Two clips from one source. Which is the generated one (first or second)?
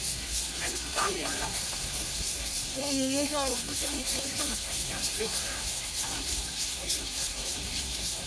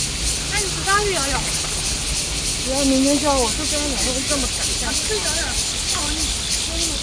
first